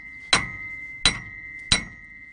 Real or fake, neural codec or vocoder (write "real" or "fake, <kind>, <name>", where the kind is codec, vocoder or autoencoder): real